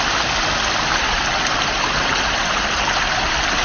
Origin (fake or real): real